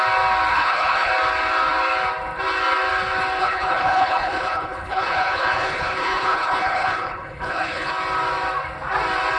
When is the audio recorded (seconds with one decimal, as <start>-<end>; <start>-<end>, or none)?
0.0-0.5; 1.1-3.4; 7.9-9.4